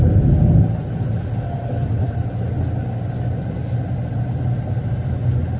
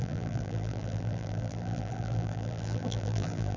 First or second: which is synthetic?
second